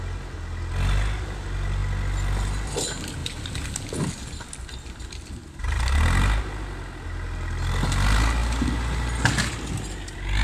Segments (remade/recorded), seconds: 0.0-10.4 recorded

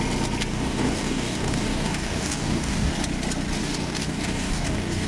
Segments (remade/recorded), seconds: 0.0-0.5 recorded; 0.5-2.9 remade; 2.9-3.6 recorded; 3.6-5.1 remade

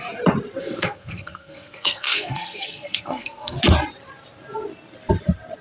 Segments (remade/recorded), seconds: 0.0-0.6 recorded; 0.6-3.6 remade; 3.6-5.6 recorded

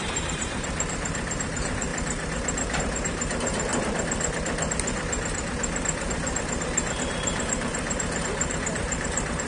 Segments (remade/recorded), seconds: 0.0-1.9 remade; 1.9-2.8 recorded; 2.8-3.7 remade; 3.7-7.0 recorded; 7.0-9.5 remade

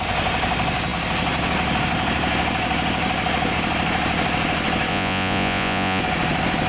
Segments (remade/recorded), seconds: 0.0-4.9 recorded; 4.9-6.0 remade; 6.0-6.7 recorded